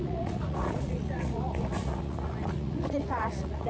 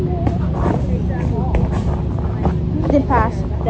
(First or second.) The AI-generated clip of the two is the first